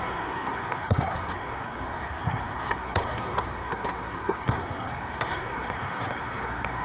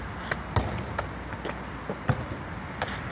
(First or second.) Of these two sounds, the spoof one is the first